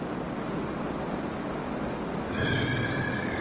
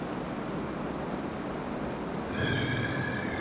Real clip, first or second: first